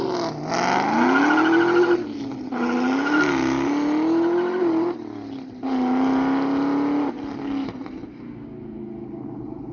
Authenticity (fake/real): real